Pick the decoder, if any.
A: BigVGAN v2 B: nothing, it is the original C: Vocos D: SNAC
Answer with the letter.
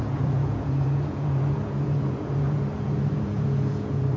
C